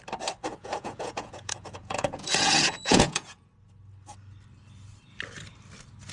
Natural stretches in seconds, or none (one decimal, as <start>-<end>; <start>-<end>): 0.0-0.5; 3.5-6.1